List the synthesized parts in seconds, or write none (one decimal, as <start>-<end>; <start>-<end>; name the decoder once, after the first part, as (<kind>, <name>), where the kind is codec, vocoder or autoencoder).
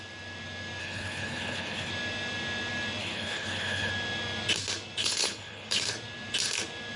0.8-1.9 (codec, HILCodec); 3.0-3.9; 5.0-5.8